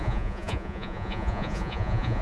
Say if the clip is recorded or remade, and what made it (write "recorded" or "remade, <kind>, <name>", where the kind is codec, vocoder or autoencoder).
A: remade, vocoder, Vocos